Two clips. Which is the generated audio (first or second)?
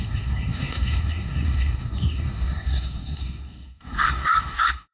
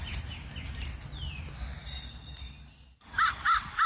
first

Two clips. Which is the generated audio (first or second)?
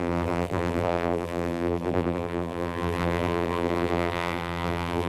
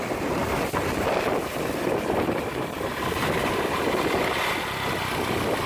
first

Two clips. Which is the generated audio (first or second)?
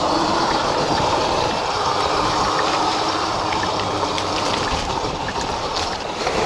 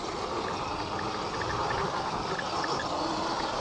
first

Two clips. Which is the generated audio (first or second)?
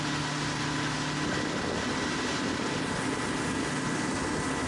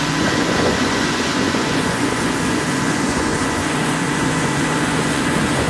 second